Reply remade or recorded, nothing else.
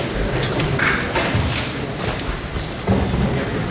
recorded